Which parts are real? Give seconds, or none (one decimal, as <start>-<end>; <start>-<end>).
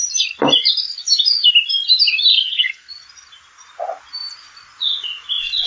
0.0-2.3; 2.9-5.7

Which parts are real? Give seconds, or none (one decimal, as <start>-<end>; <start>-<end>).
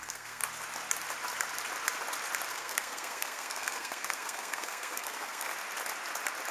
0.4-2.5; 5.5-6.5